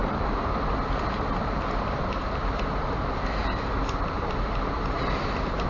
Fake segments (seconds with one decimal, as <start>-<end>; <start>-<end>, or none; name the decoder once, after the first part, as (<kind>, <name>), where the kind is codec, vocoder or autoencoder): none

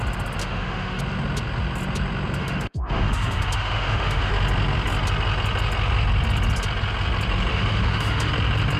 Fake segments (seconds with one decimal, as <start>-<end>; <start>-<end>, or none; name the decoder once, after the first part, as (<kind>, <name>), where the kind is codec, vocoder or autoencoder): 0.4-1.0 (autoencoder, DAC-VAE); 2.4-4.3; 7.5-8.3

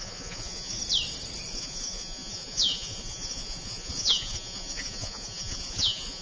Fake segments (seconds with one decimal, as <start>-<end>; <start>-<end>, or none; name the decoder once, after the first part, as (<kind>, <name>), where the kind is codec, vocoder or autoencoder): 0.0-0.8 (vocoder, Vocos); 1.5-6.2

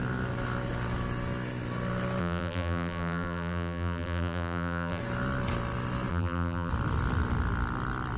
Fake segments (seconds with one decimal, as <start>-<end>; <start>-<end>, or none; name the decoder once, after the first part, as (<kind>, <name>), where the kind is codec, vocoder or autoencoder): 2.2-5.0 (vocoder, BigVGAN v2); 6.1-6.7